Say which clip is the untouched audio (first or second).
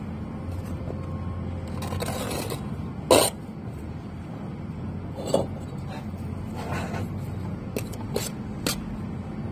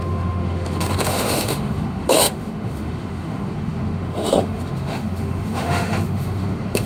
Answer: first